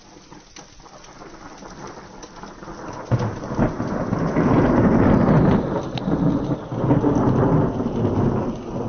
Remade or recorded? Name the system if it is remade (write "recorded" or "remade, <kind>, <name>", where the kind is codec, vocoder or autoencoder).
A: recorded